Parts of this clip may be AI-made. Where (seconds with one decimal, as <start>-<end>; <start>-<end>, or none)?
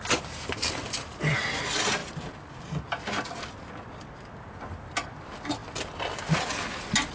none